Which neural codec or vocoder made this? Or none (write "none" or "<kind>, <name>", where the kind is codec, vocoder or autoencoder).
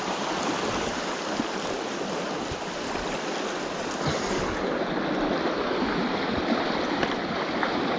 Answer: vocoder, BigVGAN v2